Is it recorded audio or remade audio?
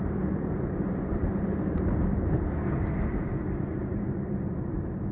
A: recorded